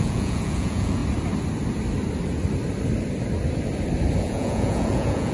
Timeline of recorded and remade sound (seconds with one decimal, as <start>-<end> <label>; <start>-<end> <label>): 0.0-1.0 remade; 1.0-4.2 recorded; 4.2-5.3 remade